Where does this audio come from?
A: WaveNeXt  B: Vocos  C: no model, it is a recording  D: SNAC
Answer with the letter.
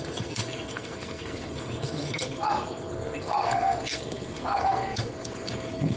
D